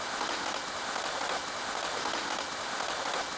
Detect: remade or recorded recorded